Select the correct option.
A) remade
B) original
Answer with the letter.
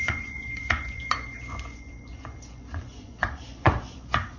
A